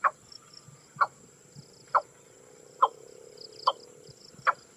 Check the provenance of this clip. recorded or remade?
recorded